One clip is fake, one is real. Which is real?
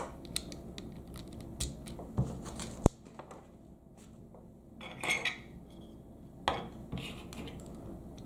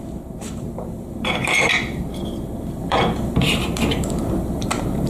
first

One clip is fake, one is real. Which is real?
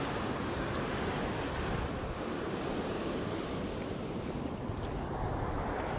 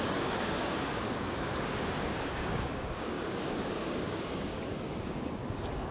first